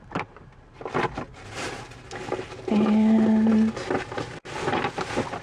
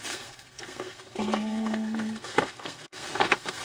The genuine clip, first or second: first